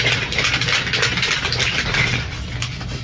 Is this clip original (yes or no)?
yes